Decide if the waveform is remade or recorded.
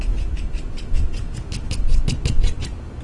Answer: recorded